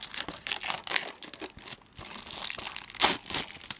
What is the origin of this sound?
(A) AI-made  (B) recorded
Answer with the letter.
B